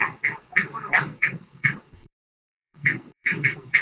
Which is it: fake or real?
fake